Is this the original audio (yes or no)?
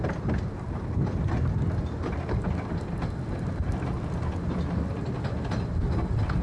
yes